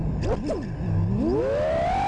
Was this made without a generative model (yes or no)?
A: yes